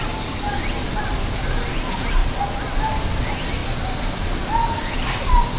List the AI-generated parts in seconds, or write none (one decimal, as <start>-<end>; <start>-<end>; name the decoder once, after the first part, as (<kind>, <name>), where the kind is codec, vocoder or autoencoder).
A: none